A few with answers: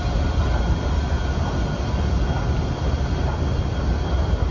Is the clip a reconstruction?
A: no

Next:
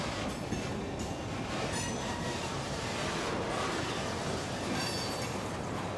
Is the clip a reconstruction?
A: no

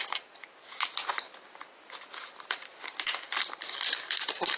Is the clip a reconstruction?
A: no